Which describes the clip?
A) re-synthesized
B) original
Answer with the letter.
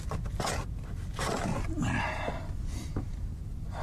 B